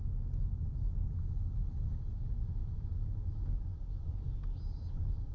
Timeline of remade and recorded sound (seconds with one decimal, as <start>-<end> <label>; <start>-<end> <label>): 0.0-5.3 recorded